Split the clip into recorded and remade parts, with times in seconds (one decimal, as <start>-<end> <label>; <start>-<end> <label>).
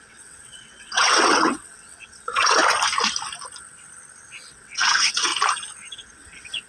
0.0-2.6 remade; 2.6-4.5 recorded; 4.5-5.3 remade; 5.3-5.9 recorded; 5.9-6.7 remade